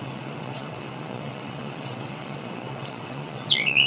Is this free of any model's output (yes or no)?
no